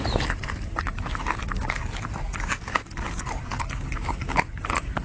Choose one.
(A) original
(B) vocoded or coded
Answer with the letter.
A